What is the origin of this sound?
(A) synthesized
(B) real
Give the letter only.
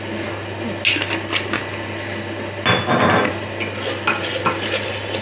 B